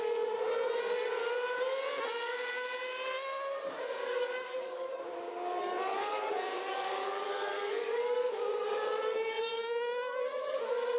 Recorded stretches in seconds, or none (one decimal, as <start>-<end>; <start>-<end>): 0.0-4.1; 5.0-5.6; 10.6-11.0